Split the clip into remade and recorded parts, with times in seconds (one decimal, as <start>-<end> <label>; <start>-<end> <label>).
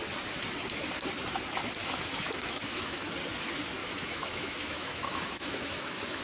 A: 0.0-1.8 recorded; 1.8-3.1 remade; 3.1-3.8 recorded; 3.8-6.2 remade